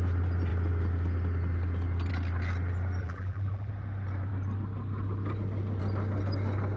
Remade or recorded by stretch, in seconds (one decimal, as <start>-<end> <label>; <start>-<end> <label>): 0.0-3.0 recorded; 3.0-3.7 remade; 3.7-6.8 recorded